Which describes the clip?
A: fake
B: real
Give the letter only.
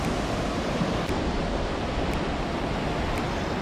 A